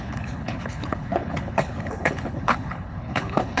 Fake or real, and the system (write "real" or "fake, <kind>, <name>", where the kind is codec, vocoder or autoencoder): fake, codec, HILCodec